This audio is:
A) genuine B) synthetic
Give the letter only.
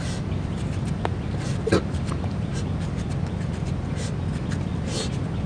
B